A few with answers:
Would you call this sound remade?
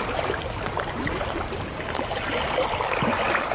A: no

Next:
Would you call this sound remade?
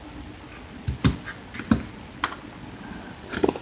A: no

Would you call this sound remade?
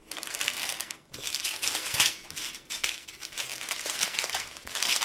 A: yes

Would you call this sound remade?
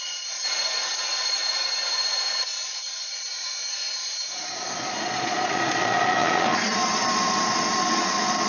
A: yes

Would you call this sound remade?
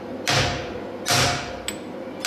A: no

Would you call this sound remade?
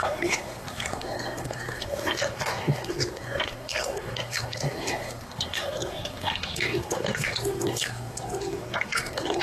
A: yes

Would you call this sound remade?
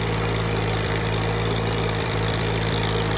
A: yes